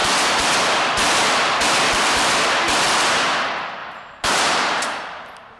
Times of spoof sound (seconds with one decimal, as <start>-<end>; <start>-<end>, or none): 3.8-5.0